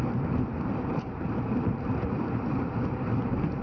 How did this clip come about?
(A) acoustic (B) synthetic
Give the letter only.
B